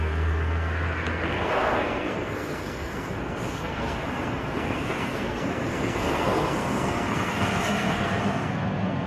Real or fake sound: fake